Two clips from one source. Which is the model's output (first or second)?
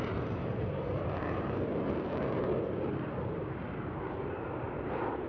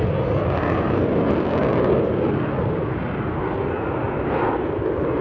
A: first